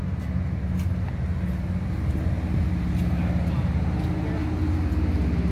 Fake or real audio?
real